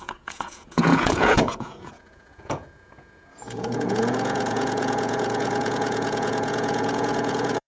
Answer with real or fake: fake